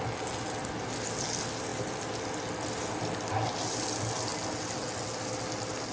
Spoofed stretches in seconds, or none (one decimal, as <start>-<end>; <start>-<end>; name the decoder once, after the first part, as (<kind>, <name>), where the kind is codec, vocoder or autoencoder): none